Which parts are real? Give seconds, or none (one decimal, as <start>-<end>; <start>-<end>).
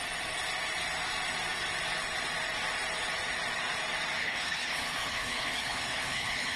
0.0-4.2